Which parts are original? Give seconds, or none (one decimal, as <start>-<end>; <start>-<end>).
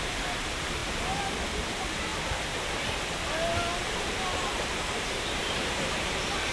0.8-1.6; 2.1-4.0